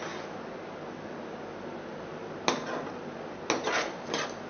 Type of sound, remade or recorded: recorded